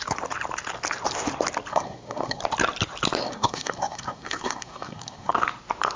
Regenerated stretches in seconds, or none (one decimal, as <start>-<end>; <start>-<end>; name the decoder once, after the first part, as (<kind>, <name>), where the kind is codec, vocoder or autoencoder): 1.7-2.4 (codec, SNAC); 3.2-5.3